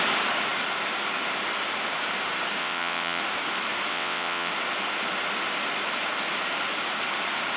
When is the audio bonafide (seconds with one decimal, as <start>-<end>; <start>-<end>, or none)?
0.0-2.6; 3.2-3.9; 4.5-7.6